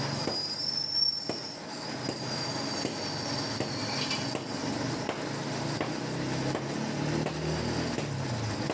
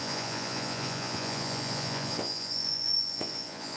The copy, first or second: second